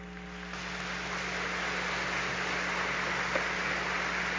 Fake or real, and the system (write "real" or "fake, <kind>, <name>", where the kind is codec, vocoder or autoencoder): real